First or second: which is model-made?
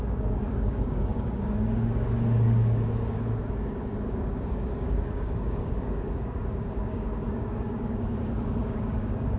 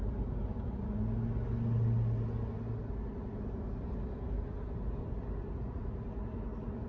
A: first